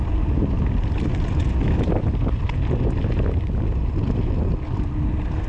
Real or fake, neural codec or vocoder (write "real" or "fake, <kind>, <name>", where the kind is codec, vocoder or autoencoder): real